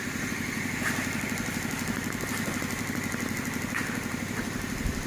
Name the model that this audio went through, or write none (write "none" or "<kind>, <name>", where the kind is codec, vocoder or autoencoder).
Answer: vocoder, BigVGAN v2